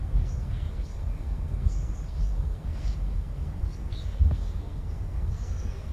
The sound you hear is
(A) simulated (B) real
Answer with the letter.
A